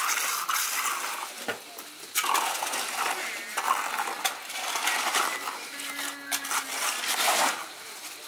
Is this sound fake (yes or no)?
no